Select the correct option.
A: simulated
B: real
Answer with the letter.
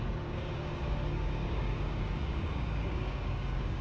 A